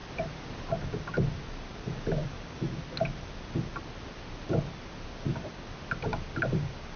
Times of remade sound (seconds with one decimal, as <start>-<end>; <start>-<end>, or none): none